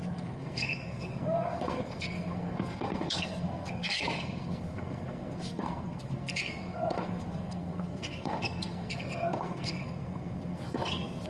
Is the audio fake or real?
fake